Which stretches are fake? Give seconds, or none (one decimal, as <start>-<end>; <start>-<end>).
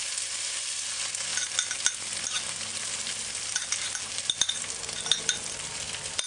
none